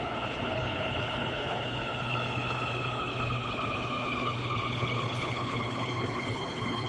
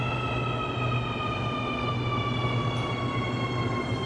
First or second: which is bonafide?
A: second